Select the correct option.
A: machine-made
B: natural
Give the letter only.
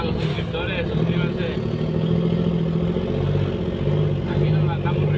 B